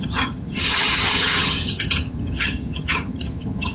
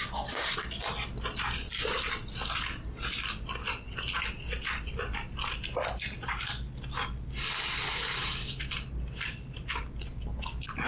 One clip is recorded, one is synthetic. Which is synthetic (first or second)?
first